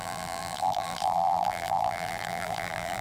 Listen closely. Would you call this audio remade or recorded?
remade